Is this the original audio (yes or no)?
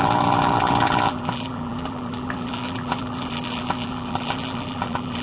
no